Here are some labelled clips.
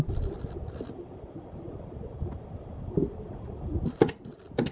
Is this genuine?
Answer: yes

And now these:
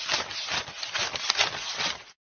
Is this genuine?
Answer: yes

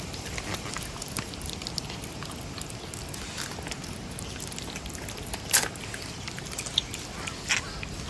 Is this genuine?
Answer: yes